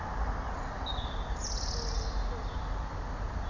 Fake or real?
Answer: real